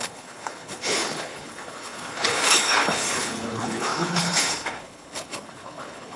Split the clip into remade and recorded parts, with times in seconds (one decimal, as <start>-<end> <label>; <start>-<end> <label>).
0.0-6.2 remade